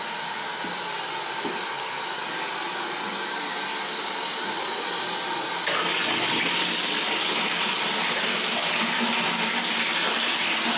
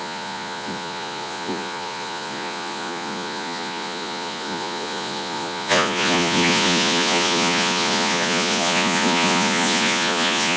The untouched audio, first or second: first